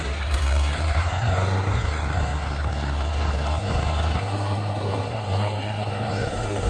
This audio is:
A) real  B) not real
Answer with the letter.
B